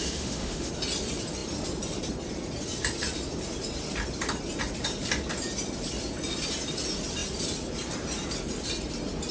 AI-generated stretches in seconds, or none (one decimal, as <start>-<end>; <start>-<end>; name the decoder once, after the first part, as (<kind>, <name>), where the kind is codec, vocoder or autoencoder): 0.0-0.7 (autoencoder, DAC-VAE)